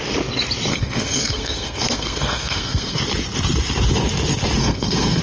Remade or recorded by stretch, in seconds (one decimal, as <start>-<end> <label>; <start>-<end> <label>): 0.0-0.7 recorded; 0.7-3.0 remade; 3.0-4.6 recorded; 4.6-5.2 remade